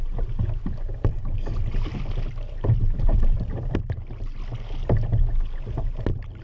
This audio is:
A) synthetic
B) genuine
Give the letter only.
B